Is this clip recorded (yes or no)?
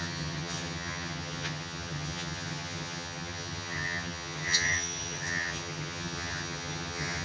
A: no